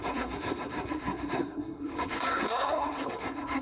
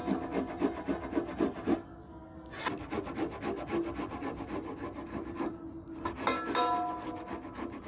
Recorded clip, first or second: second